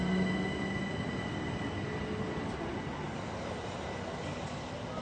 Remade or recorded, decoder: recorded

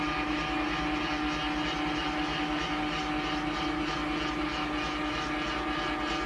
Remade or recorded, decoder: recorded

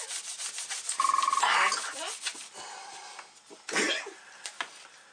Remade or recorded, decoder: recorded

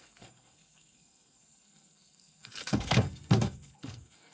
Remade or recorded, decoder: remade, codec, SNAC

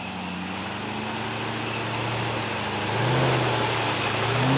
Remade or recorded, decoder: recorded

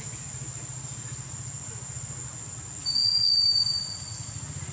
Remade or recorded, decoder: recorded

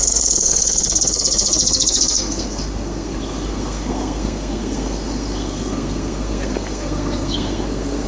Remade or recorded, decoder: remade, codec, SNAC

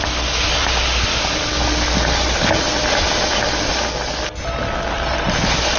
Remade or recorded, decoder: recorded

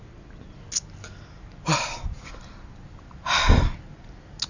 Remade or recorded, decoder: recorded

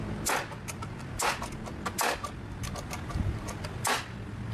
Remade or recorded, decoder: recorded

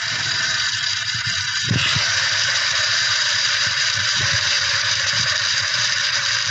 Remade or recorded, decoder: remade, vocoder, BigVGAN v2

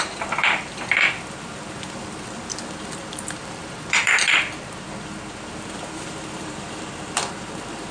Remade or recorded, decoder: remade, vocoder, BigVGAN v2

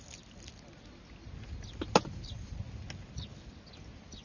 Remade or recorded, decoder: recorded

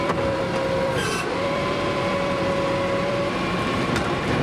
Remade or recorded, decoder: remade, vocoder, BigVGAN v2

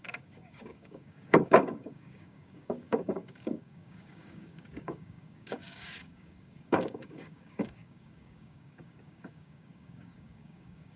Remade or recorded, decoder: remade, codec, DAC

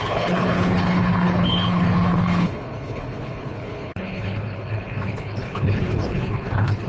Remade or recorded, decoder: remade, codec, HILCodec